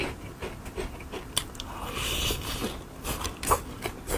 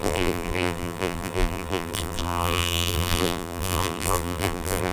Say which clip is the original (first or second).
first